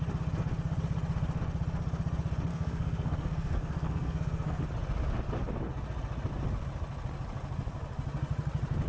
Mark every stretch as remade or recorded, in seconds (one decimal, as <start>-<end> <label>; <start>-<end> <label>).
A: 0.0-2.5 recorded; 2.5-4.6 remade; 4.6-8.9 recorded

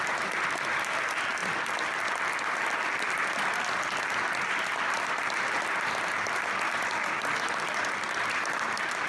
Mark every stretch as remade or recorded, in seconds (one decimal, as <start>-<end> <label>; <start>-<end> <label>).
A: 0.0-9.1 recorded

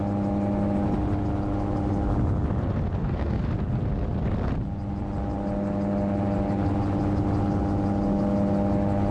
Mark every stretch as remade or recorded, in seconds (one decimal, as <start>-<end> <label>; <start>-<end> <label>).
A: 0.0-3.0 recorded; 3.0-3.5 remade; 3.5-9.1 recorded

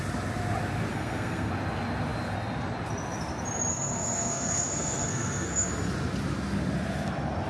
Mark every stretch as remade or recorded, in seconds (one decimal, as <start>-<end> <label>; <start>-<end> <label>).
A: 0.0-0.9 recorded; 0.9-1.5 remade; 1.5-3.7 recorded; 3.7-5.7 remade; 5.7-7.5 recorded

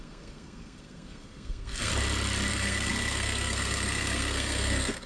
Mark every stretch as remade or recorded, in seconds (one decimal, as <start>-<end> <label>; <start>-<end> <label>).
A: 0.0-1.9 remade; 1.9-2.5 recorded; 2.5-5.1 remade

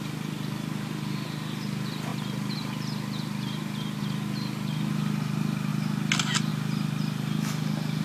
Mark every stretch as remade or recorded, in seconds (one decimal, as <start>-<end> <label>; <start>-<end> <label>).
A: 0.0-8.0 recorded

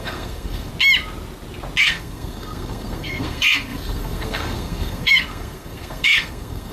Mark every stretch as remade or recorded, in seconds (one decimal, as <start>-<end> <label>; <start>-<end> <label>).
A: 0.0-0.7 remade; 0.7-1.8 recorded; 1.8-6.7 remade